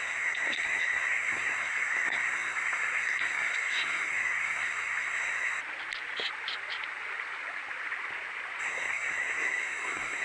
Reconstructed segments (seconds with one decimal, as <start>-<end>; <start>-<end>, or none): 0.0-5.6; 8.6-10.2